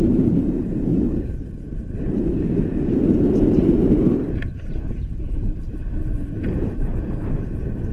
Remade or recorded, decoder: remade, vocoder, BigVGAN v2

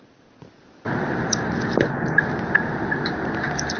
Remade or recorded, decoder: recorded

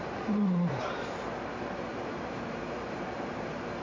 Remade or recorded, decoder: remade, vocoder, BigVGAN v2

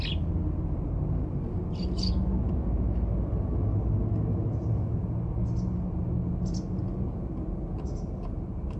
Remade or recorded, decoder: recorded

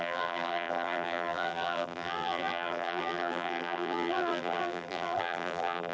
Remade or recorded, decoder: remade, vocoder, BigVGAN v2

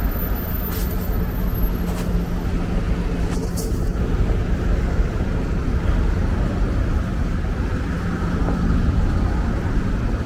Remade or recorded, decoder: recorded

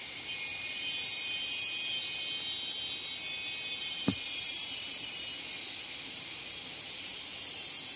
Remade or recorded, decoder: recorded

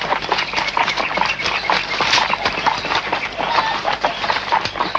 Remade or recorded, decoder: recorded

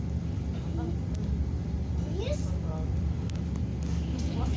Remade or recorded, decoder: recorded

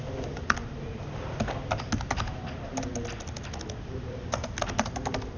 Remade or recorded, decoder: recorded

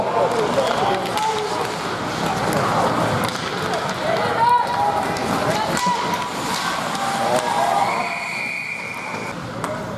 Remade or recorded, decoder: recorded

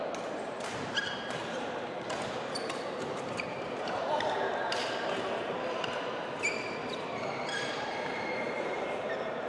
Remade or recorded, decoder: remade, vocoder, BigVGAN v2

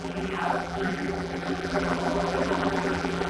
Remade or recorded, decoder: remade, vocoder, BigVGAN v2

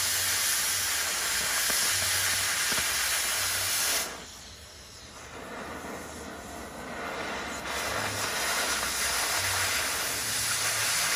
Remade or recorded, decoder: recorded